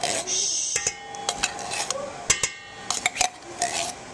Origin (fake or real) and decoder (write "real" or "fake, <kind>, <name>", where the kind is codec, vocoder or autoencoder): real